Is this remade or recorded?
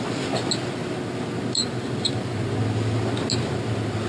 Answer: recorded